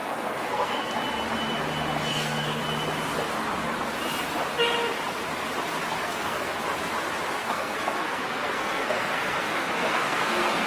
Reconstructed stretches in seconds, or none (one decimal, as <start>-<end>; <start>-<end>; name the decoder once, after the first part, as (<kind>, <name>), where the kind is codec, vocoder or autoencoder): 0.0-0.9 (codec, SNAC); 2.1-2.6; 6.0-6.5; 7.4-10.7

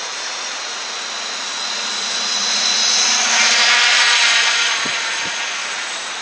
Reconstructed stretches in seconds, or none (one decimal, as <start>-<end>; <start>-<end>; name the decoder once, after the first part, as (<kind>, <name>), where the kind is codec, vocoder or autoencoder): 0.0-6.2 (vocoder, Vocos)

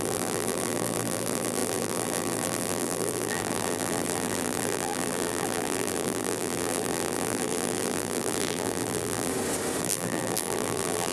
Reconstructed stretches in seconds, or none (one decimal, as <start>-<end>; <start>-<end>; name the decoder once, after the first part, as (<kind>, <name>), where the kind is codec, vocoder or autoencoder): 0.0-9.3 (vocoder, BigVGAN v2); 9.8-11.1

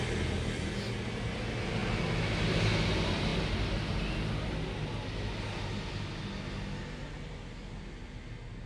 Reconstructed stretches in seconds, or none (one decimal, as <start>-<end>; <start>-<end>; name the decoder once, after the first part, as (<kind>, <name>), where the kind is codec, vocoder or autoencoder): none